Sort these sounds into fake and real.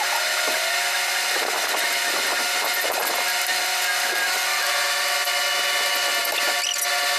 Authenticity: real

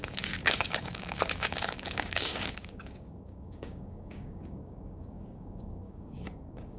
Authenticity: fake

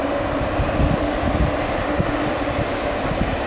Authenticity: real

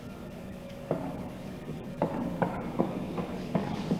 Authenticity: fake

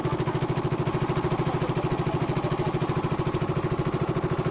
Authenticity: real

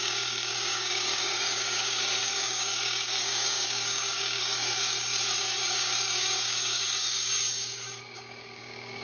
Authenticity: fake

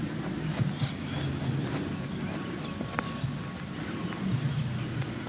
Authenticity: real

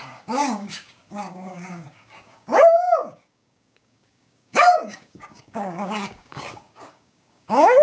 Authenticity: fake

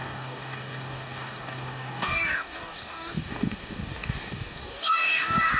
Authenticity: fake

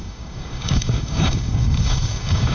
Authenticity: fake